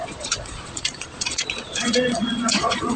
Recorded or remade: remade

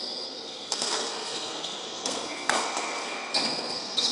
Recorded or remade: remade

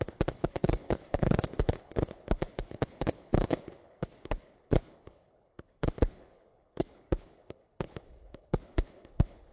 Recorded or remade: remade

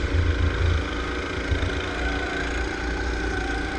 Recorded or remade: recorded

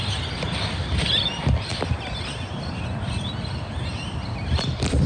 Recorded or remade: remade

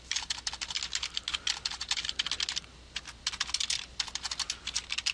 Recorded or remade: recorded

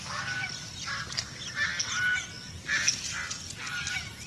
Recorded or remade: recorded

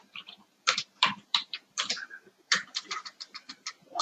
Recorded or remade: remade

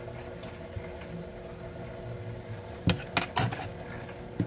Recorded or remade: recorded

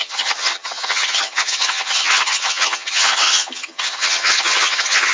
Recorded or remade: remade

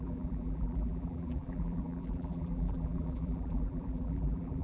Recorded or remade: remade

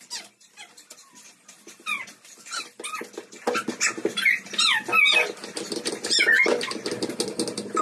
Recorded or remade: recorded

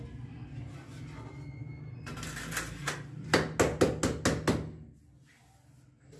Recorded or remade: recorded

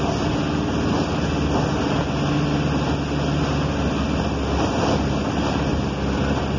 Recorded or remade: recorded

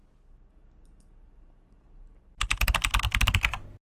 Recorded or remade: recorded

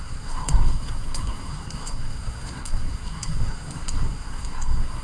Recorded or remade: remade